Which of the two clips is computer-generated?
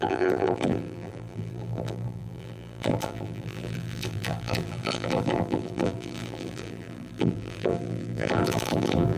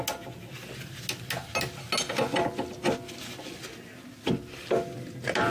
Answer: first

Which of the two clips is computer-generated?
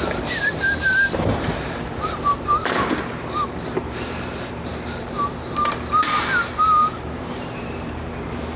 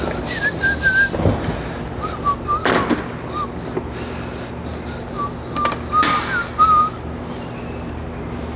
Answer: first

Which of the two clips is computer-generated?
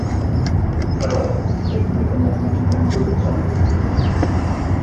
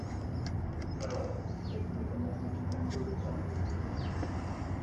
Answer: first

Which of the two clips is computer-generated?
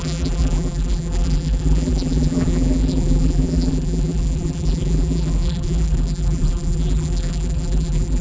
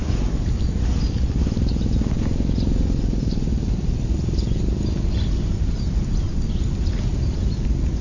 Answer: first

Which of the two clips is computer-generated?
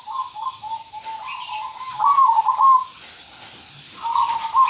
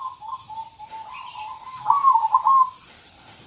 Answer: second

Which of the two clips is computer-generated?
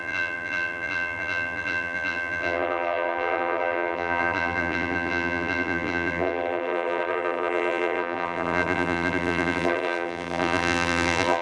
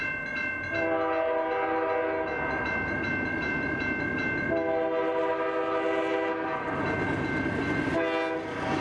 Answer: first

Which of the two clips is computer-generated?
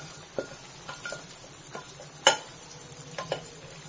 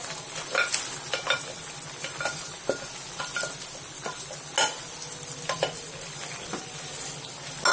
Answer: first